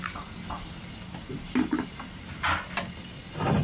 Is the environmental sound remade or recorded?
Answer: recorded